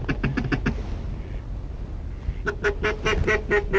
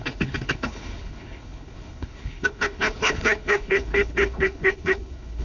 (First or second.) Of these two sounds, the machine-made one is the second